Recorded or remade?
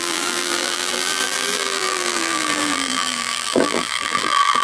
remade